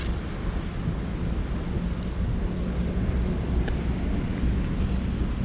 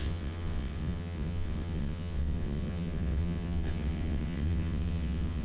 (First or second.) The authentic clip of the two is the first